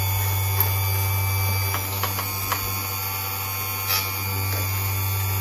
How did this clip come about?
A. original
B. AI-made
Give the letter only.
A